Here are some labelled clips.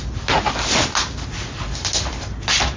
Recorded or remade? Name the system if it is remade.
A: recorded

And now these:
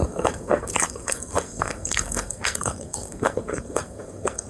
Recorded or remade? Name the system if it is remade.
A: remade, codec, SNAC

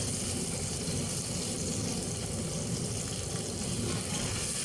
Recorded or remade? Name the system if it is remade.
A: recorded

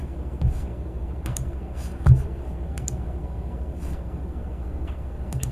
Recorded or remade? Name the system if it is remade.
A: remade, codec, SNAC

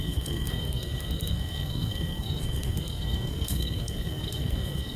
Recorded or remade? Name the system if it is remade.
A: remade, codec, SNAC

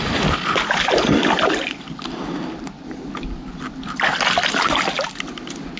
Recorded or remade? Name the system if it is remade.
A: recorded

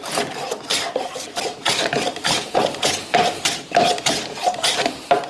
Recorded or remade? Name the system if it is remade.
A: recorded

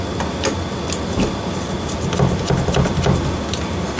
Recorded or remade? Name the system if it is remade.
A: recorded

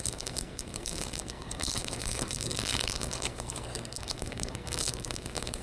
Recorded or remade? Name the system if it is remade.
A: remade, codec, SNAC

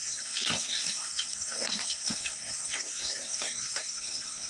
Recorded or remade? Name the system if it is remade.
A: remade, codec, SNAC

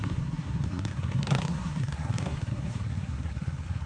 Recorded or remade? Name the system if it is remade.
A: remade, codec, SNAC